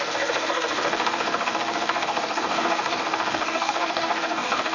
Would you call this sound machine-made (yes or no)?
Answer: yes